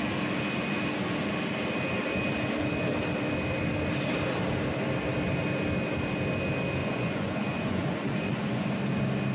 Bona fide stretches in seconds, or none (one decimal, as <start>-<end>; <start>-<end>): 0.0-6.8; 8.7-9.3